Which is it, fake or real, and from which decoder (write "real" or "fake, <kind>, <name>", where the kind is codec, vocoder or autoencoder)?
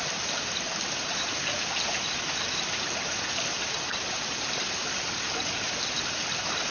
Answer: real